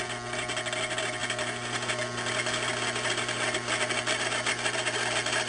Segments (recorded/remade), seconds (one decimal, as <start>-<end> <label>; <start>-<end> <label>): 0.0-1.2 recorded; 1.2-4.5 remade; 4.5-5.5 recorded